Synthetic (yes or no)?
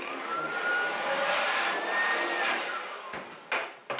no